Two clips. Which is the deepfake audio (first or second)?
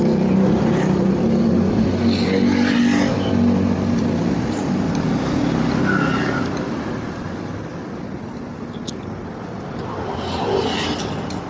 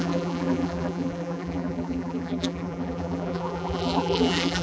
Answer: second